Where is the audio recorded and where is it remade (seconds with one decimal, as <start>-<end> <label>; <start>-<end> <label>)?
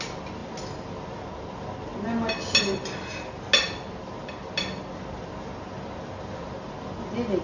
0.0-7.4 recorded